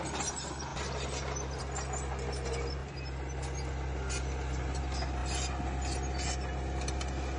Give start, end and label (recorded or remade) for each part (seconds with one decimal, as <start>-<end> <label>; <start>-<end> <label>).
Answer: 0.0-7.4 recorded